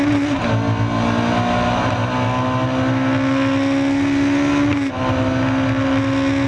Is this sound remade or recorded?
recorded